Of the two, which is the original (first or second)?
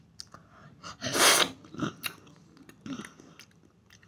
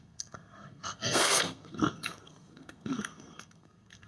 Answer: first